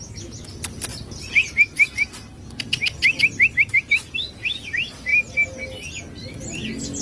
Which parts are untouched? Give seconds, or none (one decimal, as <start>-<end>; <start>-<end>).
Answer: 0.0-7.0